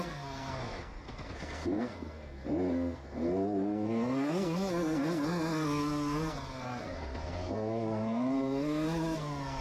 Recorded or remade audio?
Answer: remade